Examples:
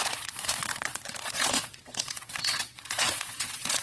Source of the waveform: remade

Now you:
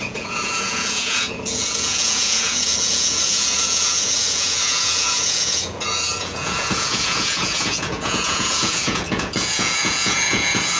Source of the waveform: remade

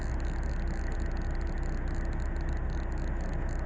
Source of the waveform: recorded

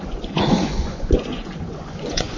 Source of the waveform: remade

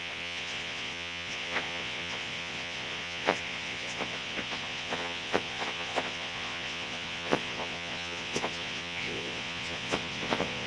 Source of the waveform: remade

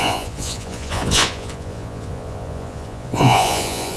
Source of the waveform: remade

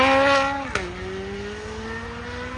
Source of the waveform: recorded